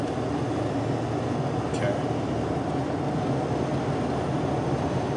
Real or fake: real